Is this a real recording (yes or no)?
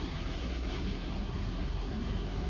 no